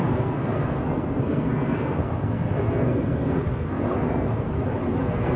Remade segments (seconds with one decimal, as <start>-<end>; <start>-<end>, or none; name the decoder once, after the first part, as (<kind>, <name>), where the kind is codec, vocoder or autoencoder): 0.0-4.5 (codec, SNAC); 5.0-5.4